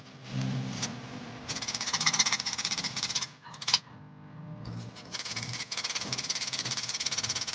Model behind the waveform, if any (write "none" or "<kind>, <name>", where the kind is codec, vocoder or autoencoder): none